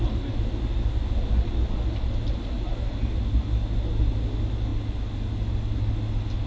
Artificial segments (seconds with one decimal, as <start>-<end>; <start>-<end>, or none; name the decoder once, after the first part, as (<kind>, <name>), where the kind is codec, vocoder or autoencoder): none